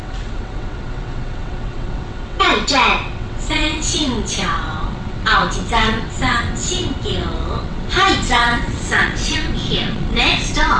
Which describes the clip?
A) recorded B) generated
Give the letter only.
B